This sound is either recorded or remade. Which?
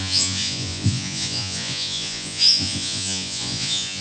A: remade